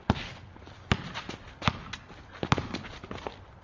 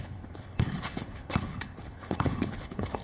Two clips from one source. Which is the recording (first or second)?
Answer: first